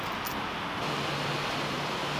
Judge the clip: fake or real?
real